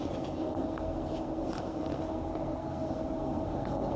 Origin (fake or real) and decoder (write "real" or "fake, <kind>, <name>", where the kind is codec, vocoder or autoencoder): fake, codec, SNAC